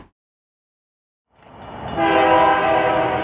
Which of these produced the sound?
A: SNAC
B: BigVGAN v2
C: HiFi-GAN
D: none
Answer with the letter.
D